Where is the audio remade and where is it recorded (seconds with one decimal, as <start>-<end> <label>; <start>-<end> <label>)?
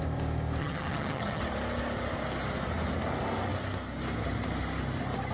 0.0-0.6 recorded; 0.6-1.4 remade; 1.4-5.3 recorded